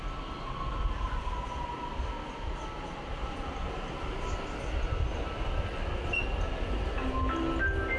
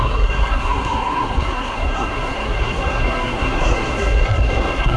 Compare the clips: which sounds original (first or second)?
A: first